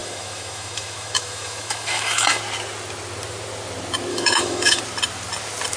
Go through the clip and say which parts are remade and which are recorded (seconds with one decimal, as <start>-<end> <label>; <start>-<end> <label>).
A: 0.0-2.4 remade; 2.4-4.1 recorded; 4.1-4.8 remade; 4.8-5.8 recorded